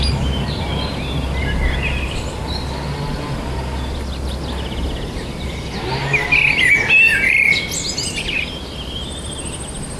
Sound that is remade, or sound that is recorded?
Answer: recorded